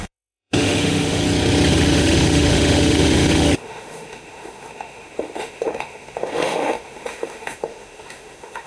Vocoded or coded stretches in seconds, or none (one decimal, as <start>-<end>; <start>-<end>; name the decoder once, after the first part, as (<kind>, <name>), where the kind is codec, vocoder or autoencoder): 0.0-1.2 (autoencoder, DAC-VAE); 1.7-8.7